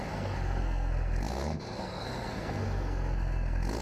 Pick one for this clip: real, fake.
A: fake